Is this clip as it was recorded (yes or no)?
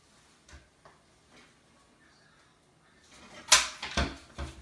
yes